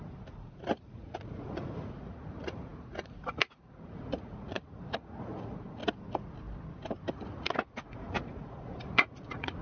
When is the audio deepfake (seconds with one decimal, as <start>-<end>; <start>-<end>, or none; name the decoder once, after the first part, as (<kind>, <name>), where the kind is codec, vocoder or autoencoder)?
0.0-5.8 (vocoder, Vocos); 7.1-9.6